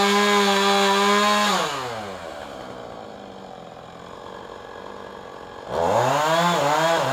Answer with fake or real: real